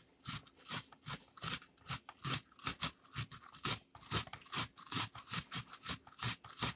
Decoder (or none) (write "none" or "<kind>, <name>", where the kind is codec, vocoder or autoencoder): none